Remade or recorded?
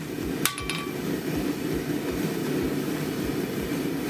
recorded